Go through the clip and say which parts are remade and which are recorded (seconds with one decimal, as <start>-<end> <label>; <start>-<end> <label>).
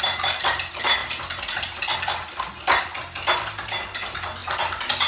0.0-5.1 recorded